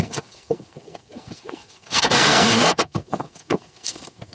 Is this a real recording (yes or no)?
no